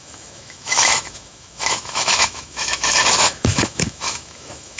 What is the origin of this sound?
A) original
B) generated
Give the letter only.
B